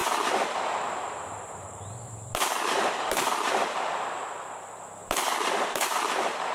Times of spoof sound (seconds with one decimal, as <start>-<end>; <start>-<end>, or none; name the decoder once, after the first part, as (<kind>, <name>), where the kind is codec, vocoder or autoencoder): 0.0-3.8 (vocoder, BigVGAN v2); 5.0-6.5